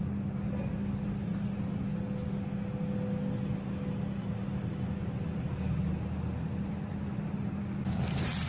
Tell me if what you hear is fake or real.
real